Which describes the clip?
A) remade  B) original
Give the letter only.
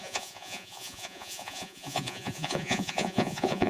A